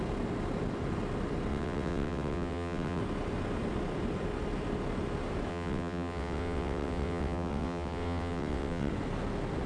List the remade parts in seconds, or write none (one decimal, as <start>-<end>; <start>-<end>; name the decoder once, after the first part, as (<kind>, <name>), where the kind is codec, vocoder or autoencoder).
1.5-3.0 (vocoder, WaveNeXt); 5.5-8.9